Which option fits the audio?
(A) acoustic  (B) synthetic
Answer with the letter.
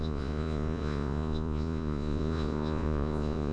B